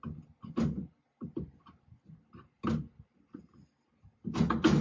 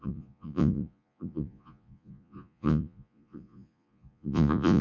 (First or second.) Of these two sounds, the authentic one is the first